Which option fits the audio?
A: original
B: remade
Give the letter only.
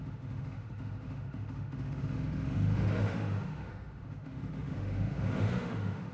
B